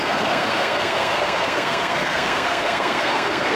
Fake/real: fake